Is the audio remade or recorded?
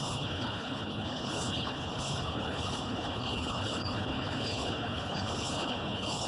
remade